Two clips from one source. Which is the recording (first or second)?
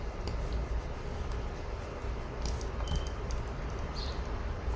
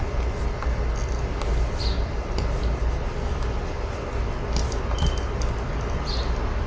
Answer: second